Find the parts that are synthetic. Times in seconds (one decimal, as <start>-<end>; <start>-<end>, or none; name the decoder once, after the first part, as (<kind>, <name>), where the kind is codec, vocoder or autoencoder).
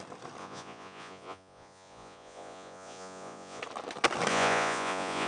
0.4-3.6 (vocoder, Vocos); 4.3-5.3